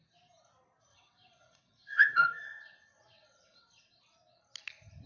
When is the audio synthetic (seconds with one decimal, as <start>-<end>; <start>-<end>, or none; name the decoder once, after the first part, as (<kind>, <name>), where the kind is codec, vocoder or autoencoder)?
0.9-4.0 (vocoder, WaveNeXt)